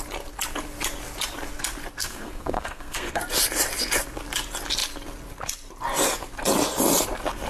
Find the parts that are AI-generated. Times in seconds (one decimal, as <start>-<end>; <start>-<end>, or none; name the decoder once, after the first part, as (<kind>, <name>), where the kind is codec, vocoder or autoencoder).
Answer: 2.0-3.2 (codec, SNAC)